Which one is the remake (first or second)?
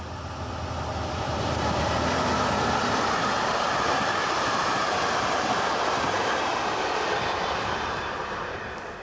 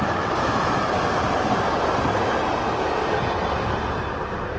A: first